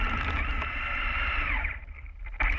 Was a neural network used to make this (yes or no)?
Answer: yes